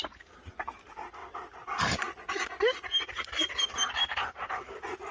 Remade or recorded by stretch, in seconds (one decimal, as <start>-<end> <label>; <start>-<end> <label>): 0.0-5.1 recorded

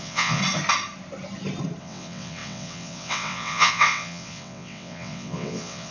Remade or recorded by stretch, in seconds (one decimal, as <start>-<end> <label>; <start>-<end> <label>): 0.0-0.4 remade; 0.4-1.8 recorded; 1.8-5.9 remade

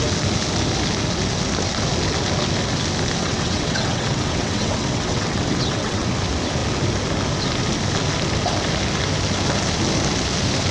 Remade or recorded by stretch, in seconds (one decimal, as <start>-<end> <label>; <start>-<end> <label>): 0.0-3.2 recorded; 3.2-6.1 remade; 6.1-10.7 recorded

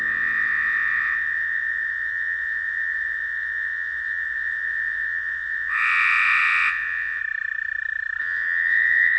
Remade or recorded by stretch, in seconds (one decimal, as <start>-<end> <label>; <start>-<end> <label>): 0.0-7.2 remade; 7.2-8.2 recorded; 8.2-9.2 remade

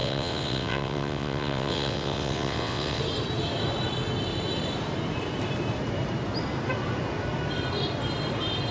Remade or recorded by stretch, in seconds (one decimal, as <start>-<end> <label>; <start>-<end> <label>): 0.0-3.0 remade; 3.0-8.7 recorded

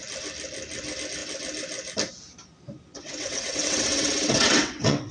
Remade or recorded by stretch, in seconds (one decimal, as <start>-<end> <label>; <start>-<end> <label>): 0.0-2.9 recorded; 2.9-5.1 remade

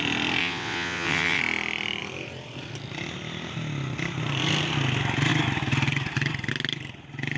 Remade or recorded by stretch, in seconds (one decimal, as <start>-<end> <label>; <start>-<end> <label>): 0.0-0.4 recorded; 0.4-1.4 remade; 1.4-7.4 recorded